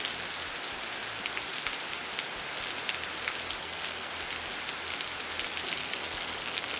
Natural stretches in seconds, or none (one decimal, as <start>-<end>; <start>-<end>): 0.0-3.6; 4.1-5.8